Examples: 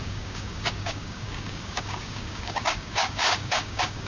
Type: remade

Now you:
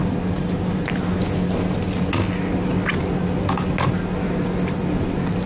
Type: recorded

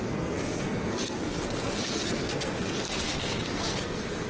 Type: remade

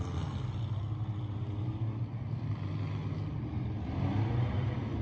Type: recorded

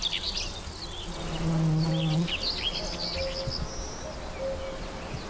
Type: recorded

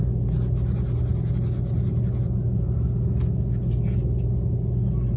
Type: recorded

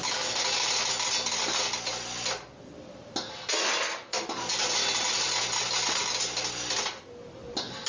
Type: recorded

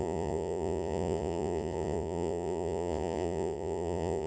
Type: remade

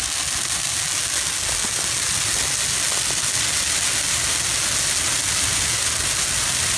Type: recorded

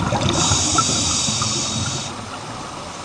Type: recorded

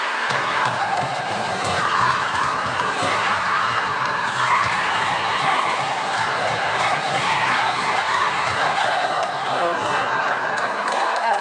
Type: remade